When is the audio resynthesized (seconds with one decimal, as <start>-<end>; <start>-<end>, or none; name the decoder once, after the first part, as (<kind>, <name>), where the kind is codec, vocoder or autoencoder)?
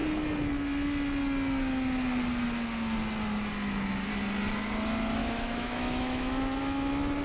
5.2-6.6 (autoencoder, DAC-VAE)